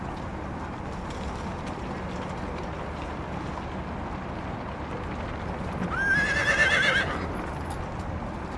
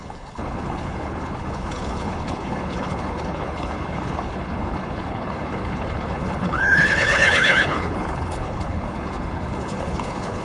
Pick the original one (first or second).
first